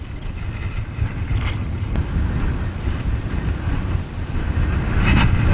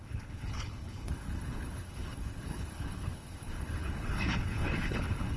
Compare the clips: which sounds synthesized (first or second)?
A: second